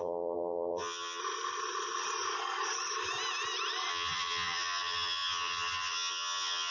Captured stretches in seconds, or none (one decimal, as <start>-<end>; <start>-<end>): 1.2-3.9